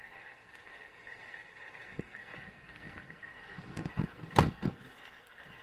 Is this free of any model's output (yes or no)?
no